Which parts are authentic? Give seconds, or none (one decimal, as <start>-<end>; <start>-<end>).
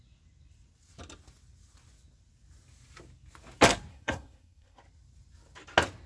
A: 0.0-3.9; 4.8-6.1